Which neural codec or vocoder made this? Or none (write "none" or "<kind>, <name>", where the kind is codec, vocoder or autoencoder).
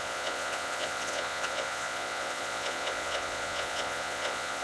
vocoder, Vocos